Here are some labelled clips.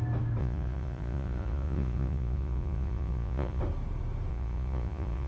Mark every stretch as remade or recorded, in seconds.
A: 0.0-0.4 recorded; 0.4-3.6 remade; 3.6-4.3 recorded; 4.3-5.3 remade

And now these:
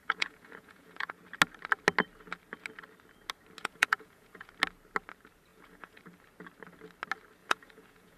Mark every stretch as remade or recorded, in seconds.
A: 0.0-1.1 remade; 1.1-3.6 recorded; 3.6-4.5 remade; 4.5-5.5 recorded; 5.5-6.0 remade; 6.0-7.4 recorded; 7.4-8.2 remade

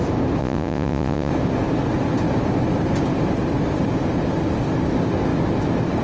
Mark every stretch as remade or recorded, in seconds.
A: 0.0-0.4 recorded; 0.4-1.3 remade; 1.3-6.0 recorded

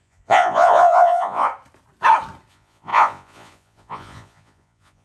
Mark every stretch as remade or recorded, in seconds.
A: 0.0-1.5 remade; 1.5-2.5 recorded; 2.5-5.0 remade

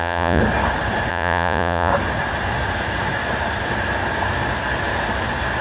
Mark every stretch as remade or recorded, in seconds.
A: 0.0-0.4 remade; 0.4-1.1 recorded; 1.1-1.9 remade; 1.9-5.6 recorded

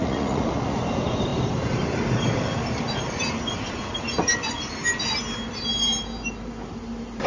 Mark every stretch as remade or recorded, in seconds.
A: 0.0-0.8 remade; 0.8-7.3 recorded

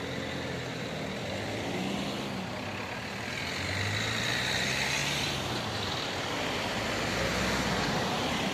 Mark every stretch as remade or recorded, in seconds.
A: 0.0-8.5 recorded